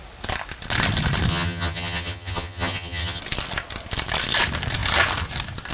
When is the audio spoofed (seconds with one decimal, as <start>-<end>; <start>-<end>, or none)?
1.3-3.2